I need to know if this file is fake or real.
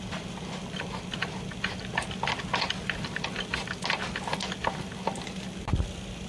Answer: real